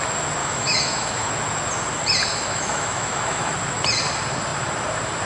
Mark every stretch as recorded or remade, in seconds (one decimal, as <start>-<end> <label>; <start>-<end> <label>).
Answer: 0.0-0.4 recorded; 0.4-1.3 remade; 1.3-2.3 recorded; 2.3-3.5 remade; 3.5-5.3 recorded